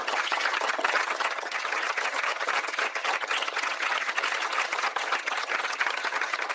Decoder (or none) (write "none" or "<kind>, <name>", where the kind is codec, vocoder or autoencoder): vocoder, HiFi-GAN